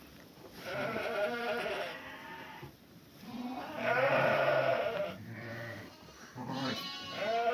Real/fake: fake